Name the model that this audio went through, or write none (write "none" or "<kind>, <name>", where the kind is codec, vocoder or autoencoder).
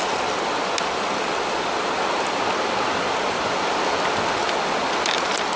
none